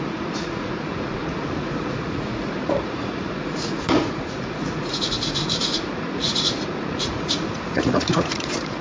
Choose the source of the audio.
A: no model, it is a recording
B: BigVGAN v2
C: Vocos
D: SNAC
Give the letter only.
C